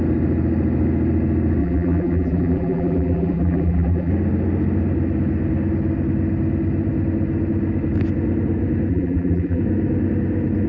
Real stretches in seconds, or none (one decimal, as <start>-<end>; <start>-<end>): 0.0-1.6; 4.1-8.9; 9.6-10.7